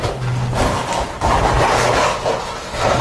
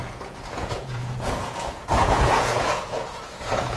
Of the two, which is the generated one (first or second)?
second